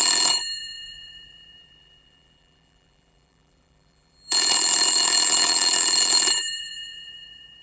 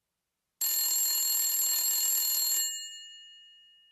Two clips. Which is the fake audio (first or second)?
first